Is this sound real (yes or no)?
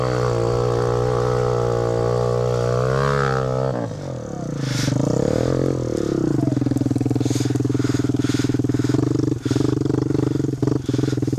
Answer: yes